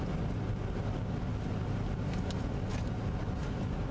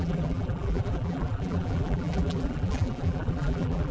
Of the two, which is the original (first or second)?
first